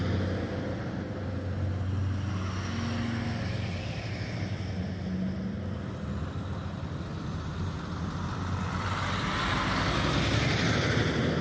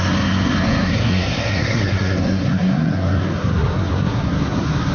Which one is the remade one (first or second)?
second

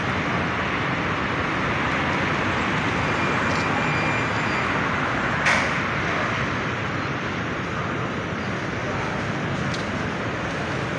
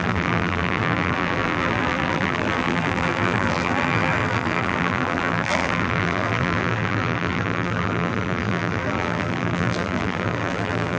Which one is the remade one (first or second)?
second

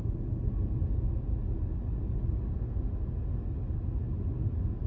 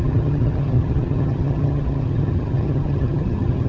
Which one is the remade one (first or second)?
second